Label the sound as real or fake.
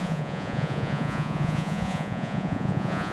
fake